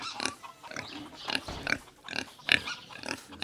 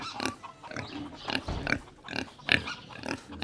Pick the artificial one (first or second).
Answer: first